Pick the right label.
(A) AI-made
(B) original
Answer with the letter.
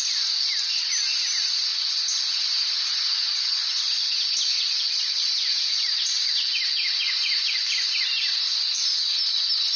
B